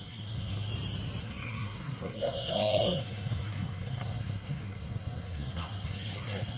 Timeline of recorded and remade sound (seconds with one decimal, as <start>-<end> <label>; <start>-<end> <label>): 0.0-0.7 remade; 0.7-1.2 recorded; 1.2-6.6 remade